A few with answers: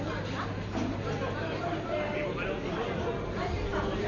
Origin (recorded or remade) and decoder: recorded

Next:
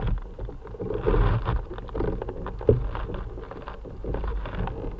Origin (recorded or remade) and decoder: recorded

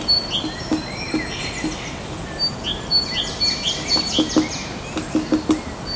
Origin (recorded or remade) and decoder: recorded